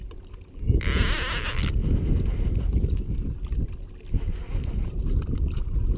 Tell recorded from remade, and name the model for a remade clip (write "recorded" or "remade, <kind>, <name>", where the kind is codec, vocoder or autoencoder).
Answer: recorded